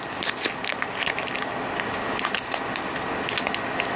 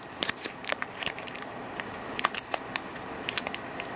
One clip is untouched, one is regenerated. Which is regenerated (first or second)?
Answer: second